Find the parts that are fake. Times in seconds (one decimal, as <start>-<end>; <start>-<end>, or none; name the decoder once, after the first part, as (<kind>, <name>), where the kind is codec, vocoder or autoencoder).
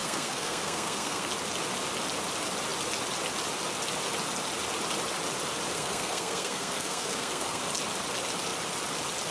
0.0-1.3 (codec, SNAC); 5.7-7.6